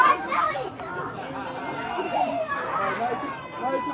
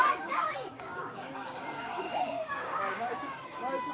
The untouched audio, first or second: first